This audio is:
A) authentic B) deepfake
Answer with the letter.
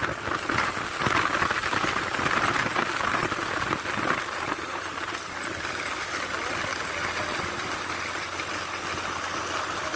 A